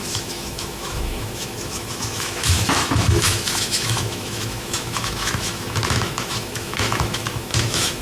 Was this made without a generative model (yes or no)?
no